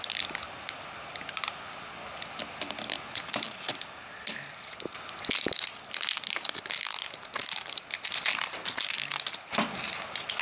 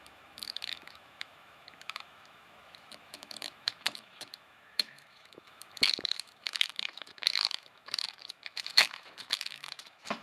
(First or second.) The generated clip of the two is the second